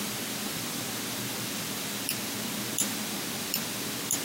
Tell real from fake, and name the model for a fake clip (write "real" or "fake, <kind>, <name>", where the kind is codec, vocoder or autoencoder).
fake, vocoder, BigVGAN v2